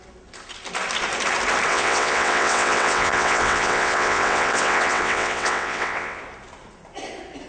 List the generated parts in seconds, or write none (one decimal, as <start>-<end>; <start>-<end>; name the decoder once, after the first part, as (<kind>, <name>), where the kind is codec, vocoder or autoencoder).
1.7-6.2 (vocoder, WaveNeXt)